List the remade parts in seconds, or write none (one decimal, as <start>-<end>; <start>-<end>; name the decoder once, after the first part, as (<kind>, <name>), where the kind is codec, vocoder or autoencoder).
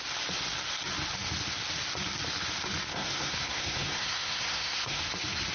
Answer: 2.9-5.0 (codec, SNAC)